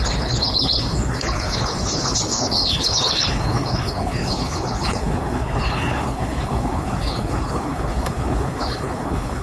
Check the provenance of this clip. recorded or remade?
remade